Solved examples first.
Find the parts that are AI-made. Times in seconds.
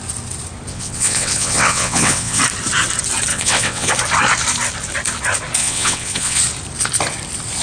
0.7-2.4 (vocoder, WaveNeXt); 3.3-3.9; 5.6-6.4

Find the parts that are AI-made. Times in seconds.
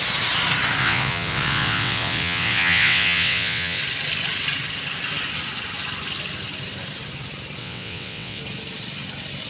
0.8-3.8 (vocoder, WaveNeXt); 7.6-8.4